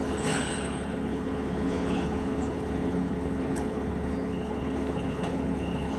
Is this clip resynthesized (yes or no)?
yes